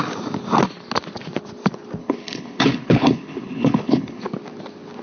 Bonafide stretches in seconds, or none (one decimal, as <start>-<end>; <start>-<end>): 0.0-2.0; 4.2-5.0